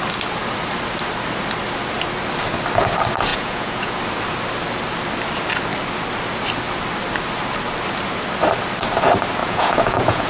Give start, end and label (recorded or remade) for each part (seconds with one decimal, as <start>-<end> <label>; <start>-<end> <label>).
0.0-3.3 recorded; 3.3-4.0 remade; 4.0-9.4 recorded; 9.4-10.3 remade